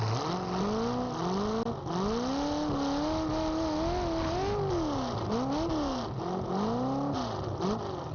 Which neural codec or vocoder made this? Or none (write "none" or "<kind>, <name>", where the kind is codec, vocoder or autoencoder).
none